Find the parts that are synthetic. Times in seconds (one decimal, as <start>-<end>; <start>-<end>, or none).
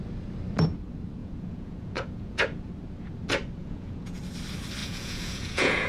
1.2-2.7; 3.6-4.2; 4.8-5.9